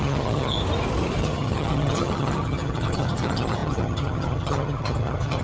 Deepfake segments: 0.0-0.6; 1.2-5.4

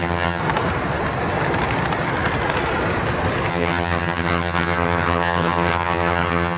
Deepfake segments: 0.0-0.4; 3.5-6.6

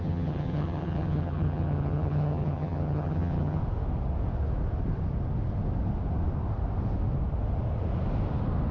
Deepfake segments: 0.0-3.6

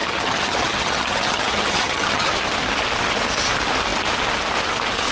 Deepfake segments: 0.0-2.3